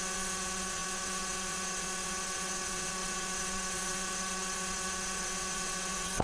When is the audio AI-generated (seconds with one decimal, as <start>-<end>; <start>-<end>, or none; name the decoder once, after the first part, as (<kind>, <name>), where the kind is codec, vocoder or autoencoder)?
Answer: 0.0-6.2 (vocoder, WaveNeXt)